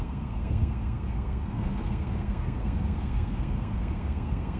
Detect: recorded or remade remade